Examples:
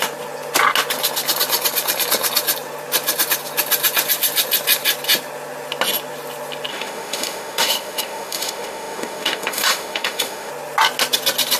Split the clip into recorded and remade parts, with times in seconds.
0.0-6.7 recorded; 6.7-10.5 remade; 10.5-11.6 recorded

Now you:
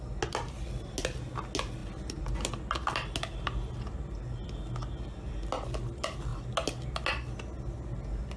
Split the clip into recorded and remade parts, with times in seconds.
0.0-8.4 recorded

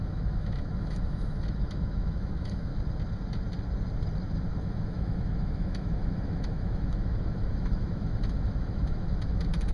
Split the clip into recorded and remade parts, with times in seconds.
0.0-2.7 remade; 2.7-4.6 recorded; 4.6-9.7 remade